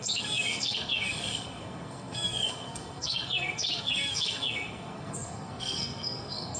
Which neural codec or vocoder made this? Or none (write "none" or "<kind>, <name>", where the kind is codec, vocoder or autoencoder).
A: codec, SNAC